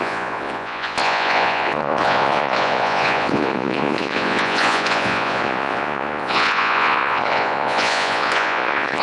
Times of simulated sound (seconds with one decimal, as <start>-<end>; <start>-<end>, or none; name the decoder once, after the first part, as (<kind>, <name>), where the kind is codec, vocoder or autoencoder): 0.0-9.0 (vocoder, Vocos)